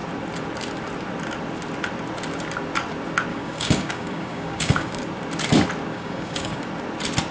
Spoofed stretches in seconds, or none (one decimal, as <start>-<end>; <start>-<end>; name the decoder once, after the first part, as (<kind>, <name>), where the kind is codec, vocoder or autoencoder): 3.3-5.0 (codec, DAC); 5.9-6.6